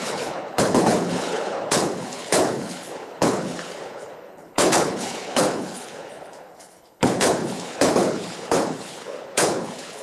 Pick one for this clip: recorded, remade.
remade